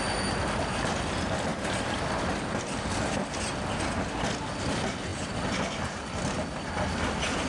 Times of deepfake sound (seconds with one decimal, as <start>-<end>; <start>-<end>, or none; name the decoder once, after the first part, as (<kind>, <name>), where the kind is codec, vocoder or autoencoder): none